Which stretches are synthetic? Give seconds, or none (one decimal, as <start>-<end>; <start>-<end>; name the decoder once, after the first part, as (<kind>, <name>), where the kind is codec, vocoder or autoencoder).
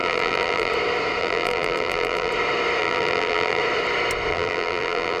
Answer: 0.0-0.7 (vocoder, BigVGAN v2); 1.2-2.3; 2.8-3.6; 4.3-5.2